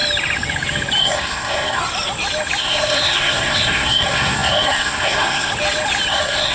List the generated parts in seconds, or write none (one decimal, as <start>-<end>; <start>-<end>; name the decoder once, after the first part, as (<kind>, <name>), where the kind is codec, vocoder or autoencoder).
1.0-1.8 (codec, SNAC); 2.6-5.5; 6.1-6.5